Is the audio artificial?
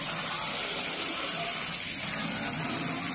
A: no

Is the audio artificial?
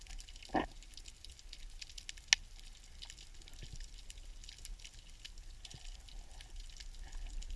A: no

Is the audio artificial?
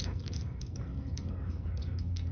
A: yes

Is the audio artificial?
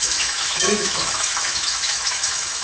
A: yes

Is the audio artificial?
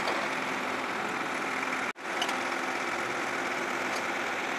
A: no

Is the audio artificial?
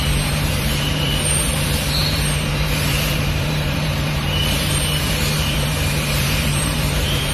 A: yes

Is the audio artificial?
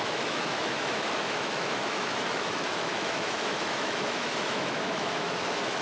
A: yes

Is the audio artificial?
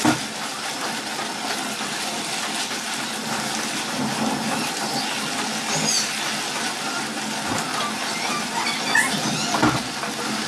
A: no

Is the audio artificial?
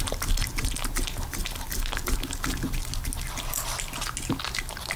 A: no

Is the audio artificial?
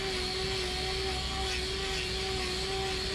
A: no